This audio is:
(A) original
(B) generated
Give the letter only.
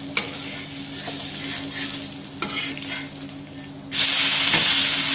A